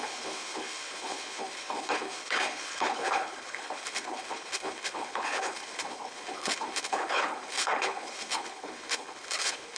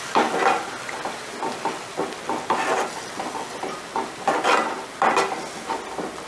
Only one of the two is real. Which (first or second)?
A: second